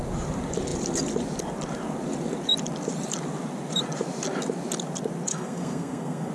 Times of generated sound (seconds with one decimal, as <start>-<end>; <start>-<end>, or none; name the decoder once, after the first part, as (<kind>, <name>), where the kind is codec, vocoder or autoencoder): 5.3-6.3 (codec, SNAC)